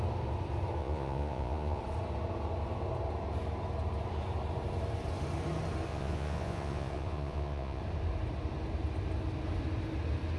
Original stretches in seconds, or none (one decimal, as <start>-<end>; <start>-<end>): 0.0-0.8; 1.8-5.9; 7.8-10.4